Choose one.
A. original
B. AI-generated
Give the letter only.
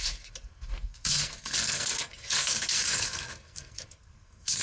B